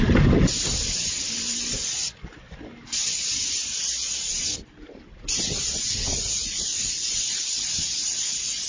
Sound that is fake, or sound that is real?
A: real